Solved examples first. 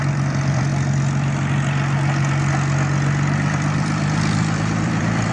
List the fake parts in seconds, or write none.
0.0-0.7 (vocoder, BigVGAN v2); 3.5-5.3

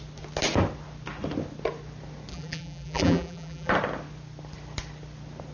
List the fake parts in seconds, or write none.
2.3-3.7 (vocoder, BigVGAN v2)

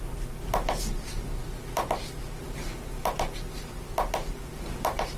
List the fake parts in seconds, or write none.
none